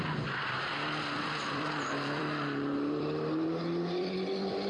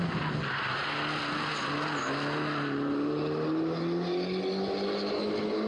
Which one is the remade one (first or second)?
first